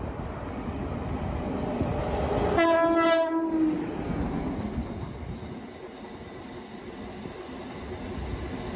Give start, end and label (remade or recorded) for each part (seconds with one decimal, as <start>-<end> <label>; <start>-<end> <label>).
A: 0.0-8.8 recorded